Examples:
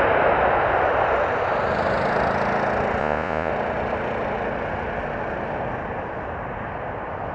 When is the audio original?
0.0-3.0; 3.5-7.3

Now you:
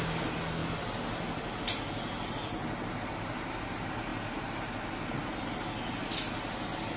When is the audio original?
0.0-7.0